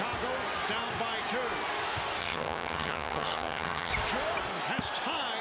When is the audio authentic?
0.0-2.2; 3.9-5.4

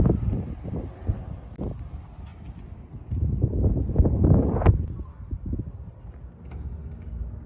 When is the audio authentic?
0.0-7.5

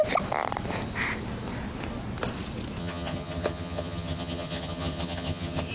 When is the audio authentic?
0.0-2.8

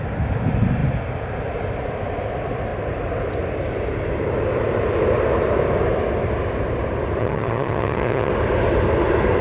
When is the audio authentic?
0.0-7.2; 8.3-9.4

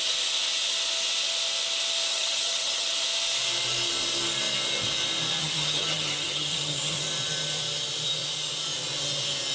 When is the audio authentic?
0.0-2.1; 2.9-5.4; 7.0-9.5